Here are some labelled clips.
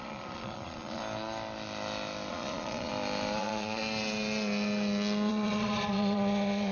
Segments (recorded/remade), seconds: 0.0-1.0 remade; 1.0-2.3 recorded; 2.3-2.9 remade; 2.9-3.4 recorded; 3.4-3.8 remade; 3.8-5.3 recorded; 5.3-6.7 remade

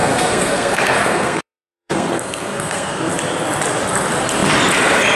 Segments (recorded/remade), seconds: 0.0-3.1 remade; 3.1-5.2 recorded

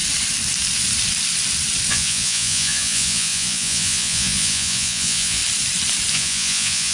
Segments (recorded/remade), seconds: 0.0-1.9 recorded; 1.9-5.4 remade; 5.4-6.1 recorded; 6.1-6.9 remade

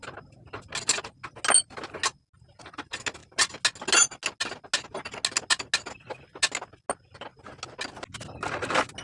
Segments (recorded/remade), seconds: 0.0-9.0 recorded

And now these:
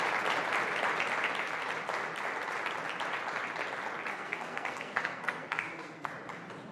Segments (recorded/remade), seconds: 0.0-4.1 recorded; 4.1-6.1 remade; 6.1-6.7 recorded

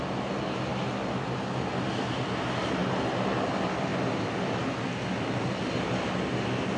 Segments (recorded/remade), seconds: 0.0-6.8 recorded